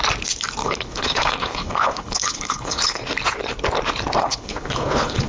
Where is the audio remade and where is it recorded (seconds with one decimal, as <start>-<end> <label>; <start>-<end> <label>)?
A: 0.0-0.6 recorded; 0.6-3.0 remade; 3.0-4.2 recorded; 4.2-5.3 remade